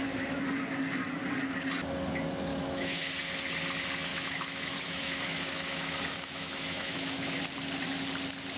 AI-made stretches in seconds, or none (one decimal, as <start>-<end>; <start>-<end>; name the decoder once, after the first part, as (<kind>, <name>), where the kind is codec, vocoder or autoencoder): 2.5-3.1 (autoencoder, DAC-VAE); 4.1-7.4